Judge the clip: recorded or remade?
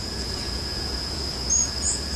remade